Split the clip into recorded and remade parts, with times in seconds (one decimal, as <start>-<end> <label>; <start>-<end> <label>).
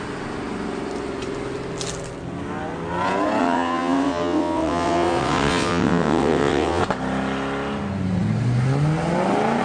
0.0-3.4 recorded; 3.4-6.8 remade; 6.8-9.6 recorded